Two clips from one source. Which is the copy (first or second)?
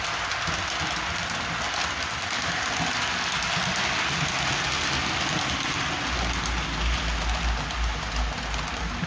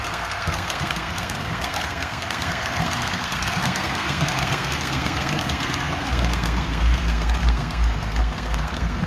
second